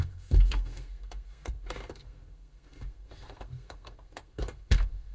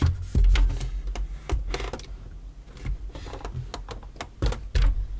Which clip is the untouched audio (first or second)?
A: second